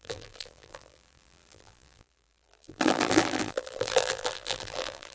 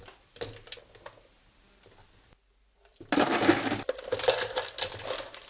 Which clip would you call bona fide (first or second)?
second